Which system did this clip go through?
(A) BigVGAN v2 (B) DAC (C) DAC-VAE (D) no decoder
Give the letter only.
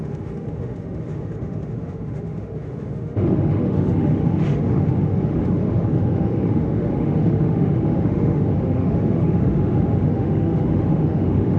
C